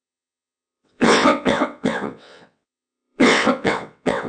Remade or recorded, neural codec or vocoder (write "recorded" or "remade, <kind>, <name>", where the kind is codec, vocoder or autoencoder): remade, vocoder, WaveNeXt